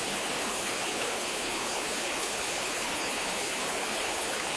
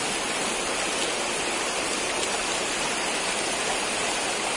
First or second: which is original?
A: second